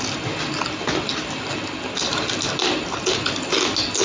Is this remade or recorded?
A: recorded